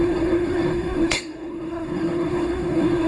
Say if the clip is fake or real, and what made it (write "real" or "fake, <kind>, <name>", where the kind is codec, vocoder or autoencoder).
fake, codec, SNAC